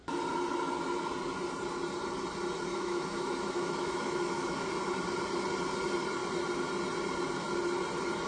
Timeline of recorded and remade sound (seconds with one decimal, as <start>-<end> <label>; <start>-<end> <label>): 0.0-2.7 recorded; 2.7-4.7 remade; 4.7-8.3 recorded